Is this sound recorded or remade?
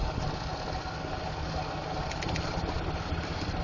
recorded